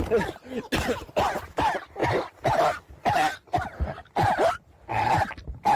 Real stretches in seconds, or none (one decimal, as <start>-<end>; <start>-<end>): 0.0-2.0; 2.9-4.0; 4.5-5.8